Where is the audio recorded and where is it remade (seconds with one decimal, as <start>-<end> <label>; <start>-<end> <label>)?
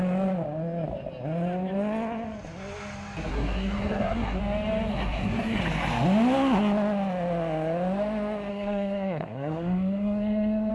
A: 0.0-3.3 recorded; 3.3-4.4 remade; 4.4-4.9 recorded; 4.9-5.6 remade; 5.6-8.5 recorded; 8.5-10.7 remade